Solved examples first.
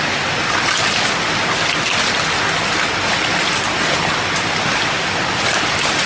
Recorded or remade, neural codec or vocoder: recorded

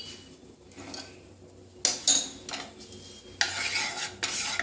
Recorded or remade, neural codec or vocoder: recorded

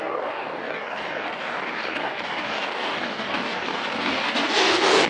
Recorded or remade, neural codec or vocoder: remade, codec, DAC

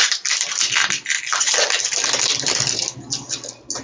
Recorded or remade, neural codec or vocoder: recorded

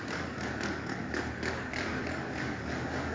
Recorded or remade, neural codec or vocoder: remade, codec, DAC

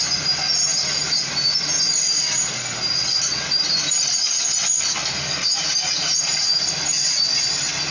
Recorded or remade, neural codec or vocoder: recorded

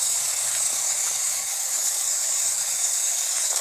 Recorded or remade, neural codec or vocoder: remade, codec, DAC